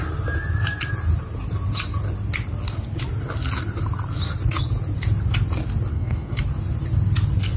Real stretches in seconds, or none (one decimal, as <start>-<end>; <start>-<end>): 0.0-5.9; 6.4-7.6